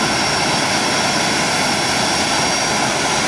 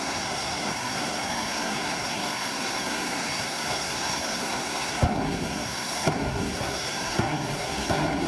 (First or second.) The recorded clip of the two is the first